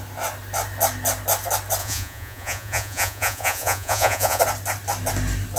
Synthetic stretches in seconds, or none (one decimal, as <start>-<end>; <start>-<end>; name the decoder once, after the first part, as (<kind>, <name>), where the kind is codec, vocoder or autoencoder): 1.8-4.4 (vocoder, Vocos)